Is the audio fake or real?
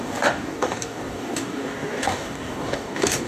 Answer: fake